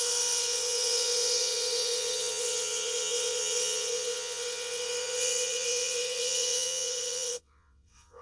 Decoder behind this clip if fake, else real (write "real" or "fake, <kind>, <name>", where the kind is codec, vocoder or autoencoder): fake, vocoder, WaveNeXt